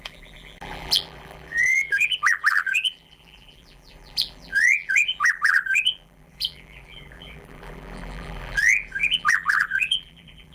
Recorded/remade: remade